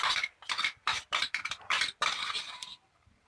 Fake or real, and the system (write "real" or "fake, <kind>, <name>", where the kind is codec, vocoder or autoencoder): fake, vocoder, BigVGAN v2